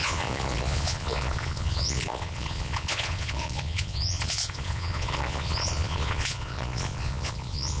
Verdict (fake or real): fake